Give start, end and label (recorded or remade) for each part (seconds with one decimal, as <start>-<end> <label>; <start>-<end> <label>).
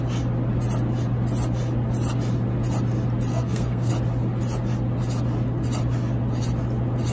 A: 0.0-3.3 recorded; 3.3-3.9 remade; 3.9-7.1 recorded